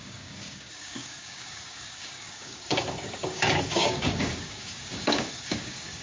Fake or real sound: fake